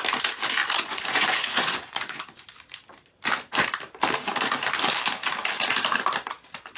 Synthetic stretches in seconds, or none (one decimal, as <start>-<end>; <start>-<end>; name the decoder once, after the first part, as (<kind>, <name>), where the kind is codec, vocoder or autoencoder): 0.6-2.2 (vocoder, Vocos)